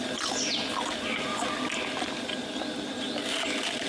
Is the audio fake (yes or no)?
no